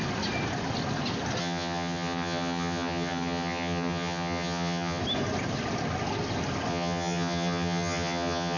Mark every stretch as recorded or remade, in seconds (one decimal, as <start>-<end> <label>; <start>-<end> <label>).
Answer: 0.0-1.4 recorded; 1.4-5.0 remade; 5.0-6.7 recorded; 6.7-8.6 remade